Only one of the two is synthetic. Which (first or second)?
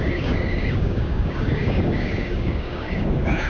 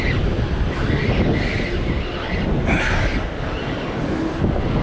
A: first